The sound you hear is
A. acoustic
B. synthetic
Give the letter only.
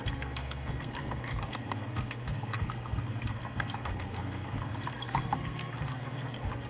B